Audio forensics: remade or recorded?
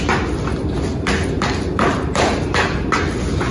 recorded